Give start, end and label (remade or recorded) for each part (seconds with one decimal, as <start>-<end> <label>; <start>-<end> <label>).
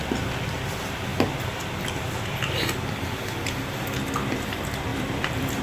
0.0-4.9 recorded; 4.9-5.6 remade